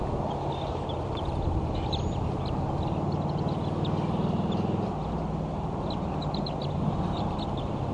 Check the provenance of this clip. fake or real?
real